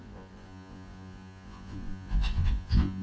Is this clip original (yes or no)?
no